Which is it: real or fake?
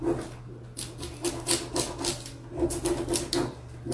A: real